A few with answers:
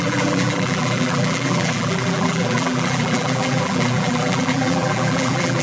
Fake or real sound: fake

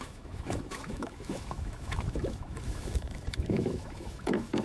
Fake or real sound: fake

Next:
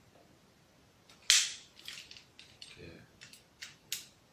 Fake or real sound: real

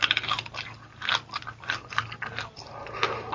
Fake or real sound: real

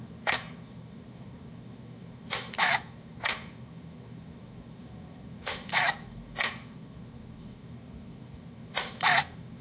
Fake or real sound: fake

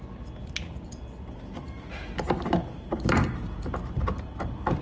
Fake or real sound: real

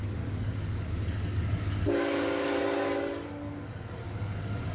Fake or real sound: fake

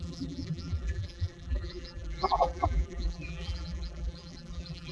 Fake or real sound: fake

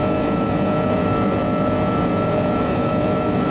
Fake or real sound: fake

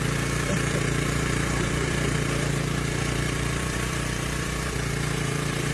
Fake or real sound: fake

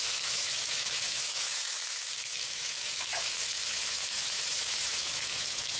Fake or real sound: fake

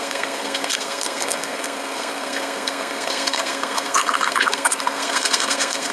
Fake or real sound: fake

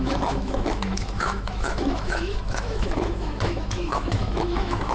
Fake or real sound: fake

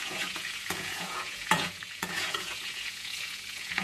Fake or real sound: fake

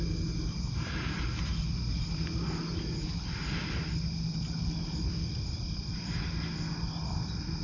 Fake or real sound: real